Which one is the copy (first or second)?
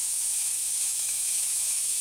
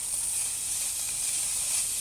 first